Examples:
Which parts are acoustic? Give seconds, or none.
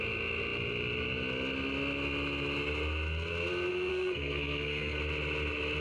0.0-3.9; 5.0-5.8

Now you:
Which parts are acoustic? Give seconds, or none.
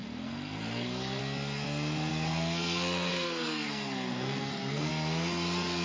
1.2-2.1; 4.9-5.8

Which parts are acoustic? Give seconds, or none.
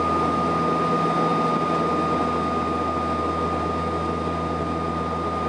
0.0-5.5